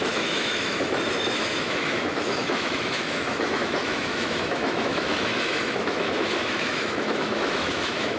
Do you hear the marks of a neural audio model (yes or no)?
yes